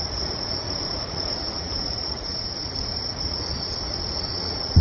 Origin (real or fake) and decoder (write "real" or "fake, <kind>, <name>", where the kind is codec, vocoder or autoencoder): fake, vocoder, Vocos